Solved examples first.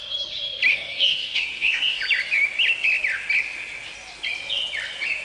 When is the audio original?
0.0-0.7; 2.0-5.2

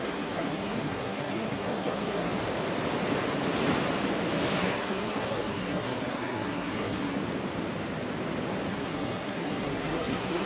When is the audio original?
2.3-4.5; 7.2-8.7

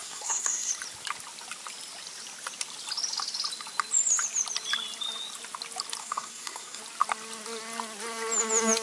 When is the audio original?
0.7-6.0; 6.8-8.8

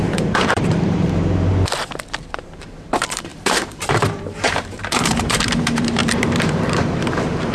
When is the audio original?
1.5-2.4

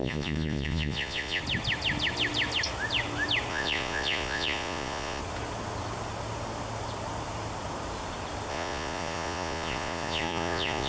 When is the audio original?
1.4-3.5; 5.2-8.5

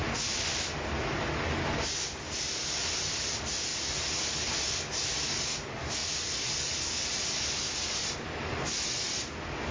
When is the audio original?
0.0-9.7

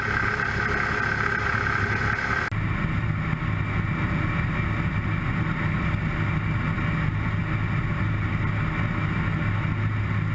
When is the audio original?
0.0-10.3